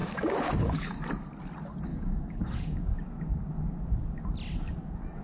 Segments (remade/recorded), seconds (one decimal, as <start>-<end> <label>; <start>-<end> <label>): 0.0-1.0 remade; 1.0-1.9 recorded; 1.9-3.0 remade; 3.0-5.2 recorded